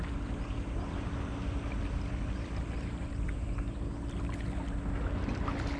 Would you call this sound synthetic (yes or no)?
no